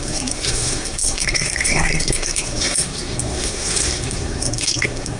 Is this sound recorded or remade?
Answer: remade